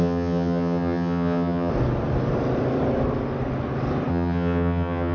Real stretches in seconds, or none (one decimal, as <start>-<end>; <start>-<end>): 1.7-4.1